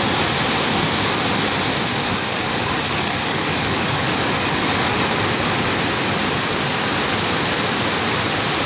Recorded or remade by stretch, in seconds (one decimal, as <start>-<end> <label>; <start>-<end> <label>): 0.0-1.9 recorded; 1.9-5.0 remade; 5.0-8.7 recorded